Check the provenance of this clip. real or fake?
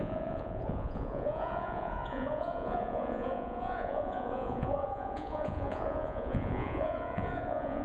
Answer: fake